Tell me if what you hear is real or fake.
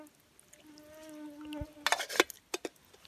real